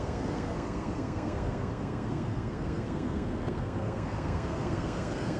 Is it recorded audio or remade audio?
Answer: remade